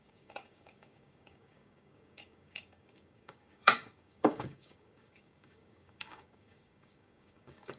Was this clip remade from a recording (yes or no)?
yes